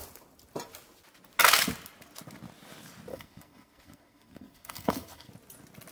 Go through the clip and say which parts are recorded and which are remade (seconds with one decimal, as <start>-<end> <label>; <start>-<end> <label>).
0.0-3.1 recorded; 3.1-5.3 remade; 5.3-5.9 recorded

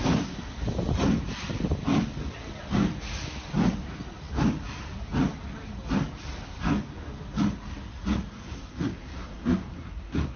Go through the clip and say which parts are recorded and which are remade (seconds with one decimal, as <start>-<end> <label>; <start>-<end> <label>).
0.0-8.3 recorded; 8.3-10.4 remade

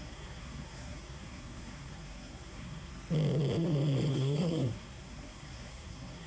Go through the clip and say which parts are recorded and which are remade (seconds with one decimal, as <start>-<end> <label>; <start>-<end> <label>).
0.0-2.9 remade; 2.9-4.1 recorded; 4.1-6.3 remade